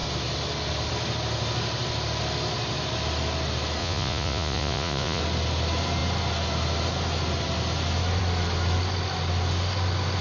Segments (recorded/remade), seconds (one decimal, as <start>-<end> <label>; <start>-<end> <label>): 0.0-3.8 recorded; 3.8-5.2 remade; 5.2-10.2 recorded